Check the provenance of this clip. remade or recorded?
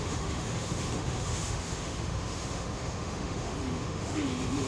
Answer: remade